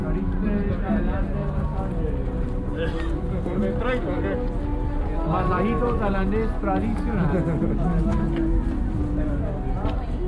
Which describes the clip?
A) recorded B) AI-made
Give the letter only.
A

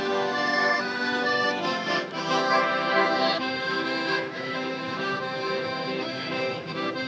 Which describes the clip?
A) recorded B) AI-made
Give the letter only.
B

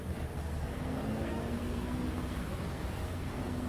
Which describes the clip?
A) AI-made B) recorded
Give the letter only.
A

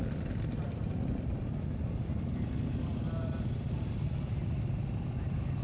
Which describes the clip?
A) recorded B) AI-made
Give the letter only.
A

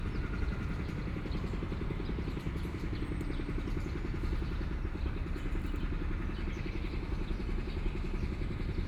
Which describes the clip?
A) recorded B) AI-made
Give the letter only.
A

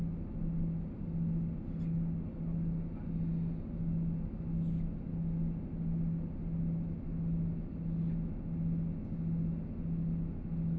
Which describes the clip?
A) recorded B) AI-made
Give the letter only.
A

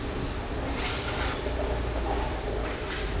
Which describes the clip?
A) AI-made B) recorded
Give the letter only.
B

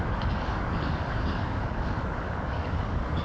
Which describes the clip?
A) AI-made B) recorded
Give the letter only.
A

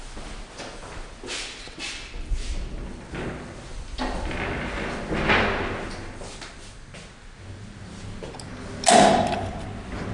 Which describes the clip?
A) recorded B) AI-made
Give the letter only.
A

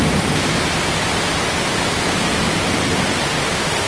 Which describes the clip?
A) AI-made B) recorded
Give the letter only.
A